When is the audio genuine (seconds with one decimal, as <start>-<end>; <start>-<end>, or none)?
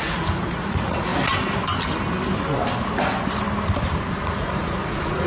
1.1-4.1